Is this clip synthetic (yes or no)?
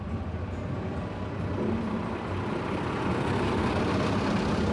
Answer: yes